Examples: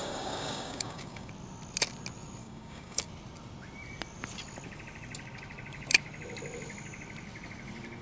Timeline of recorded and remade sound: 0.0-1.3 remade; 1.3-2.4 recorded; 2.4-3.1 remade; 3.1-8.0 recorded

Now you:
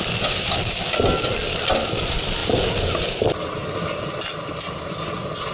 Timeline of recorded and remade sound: 0.0-5.5 recorded

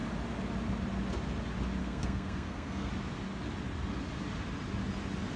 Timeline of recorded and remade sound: 0.0-1.8 recorded; 1.8-2.9 remade; 2.9-5.4 recorded

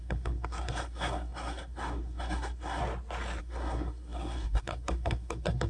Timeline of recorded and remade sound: 0.0-2.8 remade; 2.8-3.4 recorded; 3.4-5.7 remade

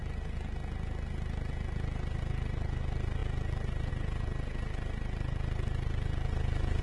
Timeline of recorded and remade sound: 0.0-6.8 recorded